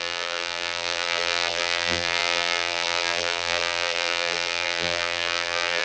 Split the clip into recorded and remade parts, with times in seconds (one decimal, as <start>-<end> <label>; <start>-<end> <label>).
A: 0.0-5.8 remade